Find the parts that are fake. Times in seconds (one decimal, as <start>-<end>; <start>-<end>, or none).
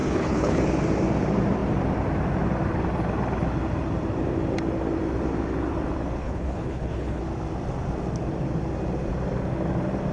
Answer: 0.0-0.6; 6.2-7.2